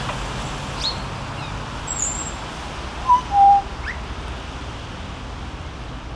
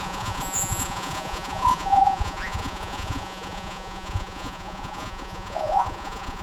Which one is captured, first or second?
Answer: first